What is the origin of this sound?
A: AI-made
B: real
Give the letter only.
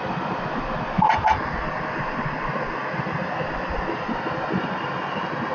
B